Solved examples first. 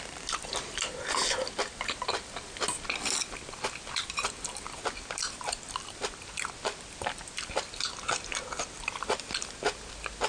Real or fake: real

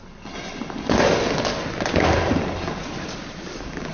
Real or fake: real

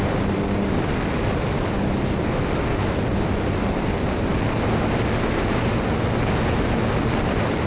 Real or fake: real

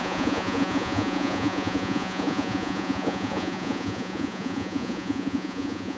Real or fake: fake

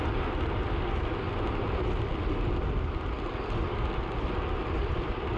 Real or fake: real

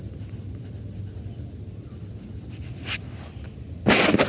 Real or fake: real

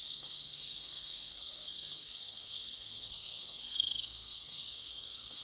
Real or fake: fake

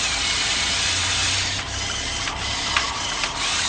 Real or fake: fake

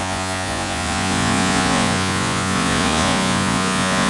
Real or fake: fake